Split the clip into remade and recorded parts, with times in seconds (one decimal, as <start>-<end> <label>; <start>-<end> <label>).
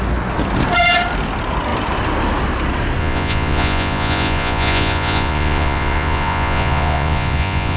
0.0-3.0 recorded; 3.0-7.8 remade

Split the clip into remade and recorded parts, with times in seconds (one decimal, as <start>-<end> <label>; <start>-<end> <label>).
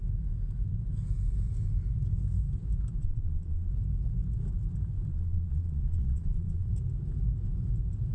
0.0-3.0 recorded; 3.0-3.7 remade; 3.7-5.1 recorded; 5.1-6.7 remade; 6.7-8.1 recorded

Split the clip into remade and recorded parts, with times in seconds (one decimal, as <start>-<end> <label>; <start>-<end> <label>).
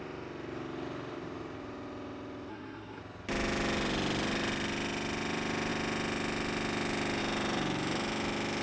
0.0-2.5 recorded; 2.5-3.0 remade; 3.0-8.6 recorded